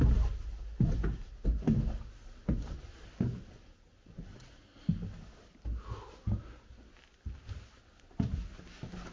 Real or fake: real